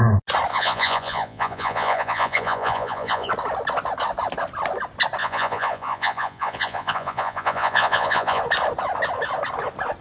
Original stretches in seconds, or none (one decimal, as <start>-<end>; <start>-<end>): 0.0-0.5; 3.3-5.2; 8.4-10.0